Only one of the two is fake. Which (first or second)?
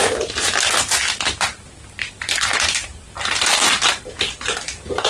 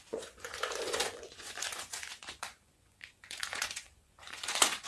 second